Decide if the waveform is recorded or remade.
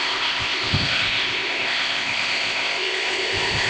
remade